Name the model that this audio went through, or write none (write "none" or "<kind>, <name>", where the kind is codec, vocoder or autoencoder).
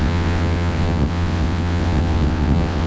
vocoder, WaveNeXt